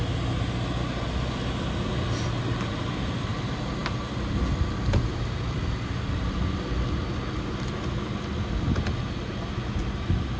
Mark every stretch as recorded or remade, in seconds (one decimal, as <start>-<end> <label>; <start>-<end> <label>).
0.0-10.4 recorded